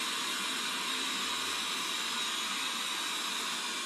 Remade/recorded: recorded